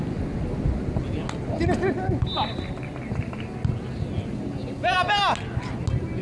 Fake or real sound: real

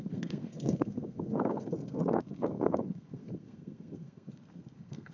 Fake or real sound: fake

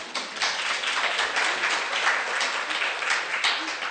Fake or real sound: real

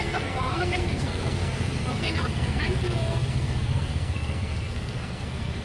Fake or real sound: fake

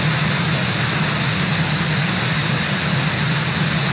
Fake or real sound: real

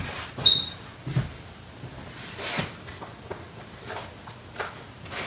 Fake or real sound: real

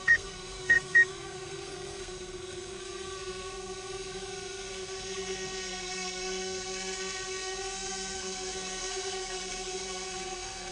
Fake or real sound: fake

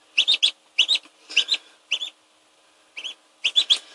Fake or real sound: real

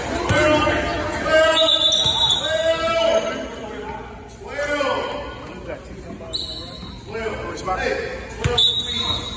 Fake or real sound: real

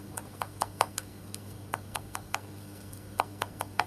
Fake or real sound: fake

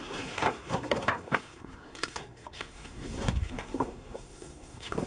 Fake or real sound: fake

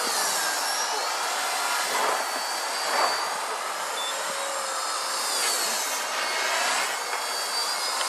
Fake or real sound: real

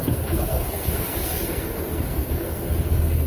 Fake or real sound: fake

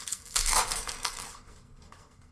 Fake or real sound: fake